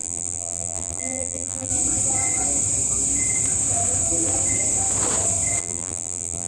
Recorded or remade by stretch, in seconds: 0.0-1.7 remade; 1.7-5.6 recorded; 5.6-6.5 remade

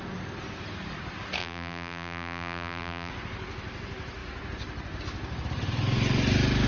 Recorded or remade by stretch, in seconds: 0.0-1.4 recorded; 1.4-3.1 remade; 3.1-6.7 recorded

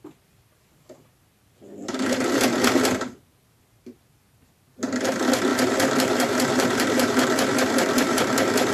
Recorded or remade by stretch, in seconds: 0.0-1.8 recorded; 1.8-2.4 remade; 2.4-5.5 recorded; 5.5-8.7 remade

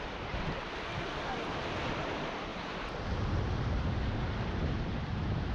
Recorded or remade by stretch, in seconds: 0.0-2.5 recorded; 2.5-3.6 remade; 3.6-4.6 recorded; 4.6-5.5 remade

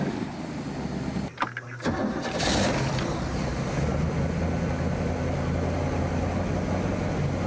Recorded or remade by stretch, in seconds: 0.0-7.5 recorded

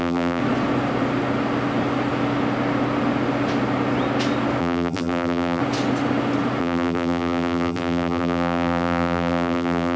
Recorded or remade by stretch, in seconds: 0.0-0.4 remade; 0.4-4.6 recorded; 4.6-5.6 remade; 5.6-6.6 recorded; 6.6-10.0 remade